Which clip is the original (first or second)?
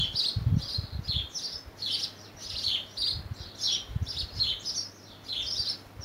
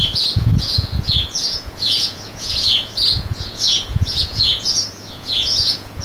first